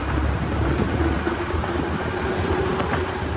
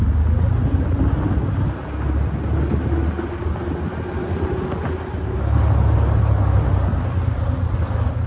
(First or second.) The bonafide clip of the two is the second